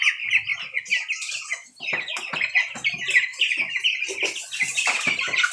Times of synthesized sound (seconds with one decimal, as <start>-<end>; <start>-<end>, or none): 3.3-4.0